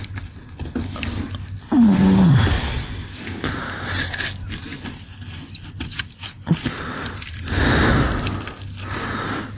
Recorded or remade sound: recorded